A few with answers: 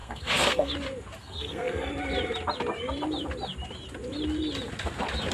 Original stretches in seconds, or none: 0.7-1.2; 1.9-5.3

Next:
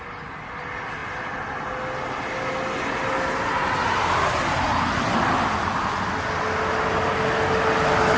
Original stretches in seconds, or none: 0.0-8.2

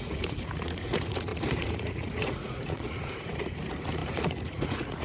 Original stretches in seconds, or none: none